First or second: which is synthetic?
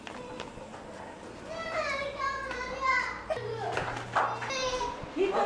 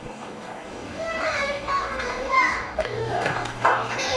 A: second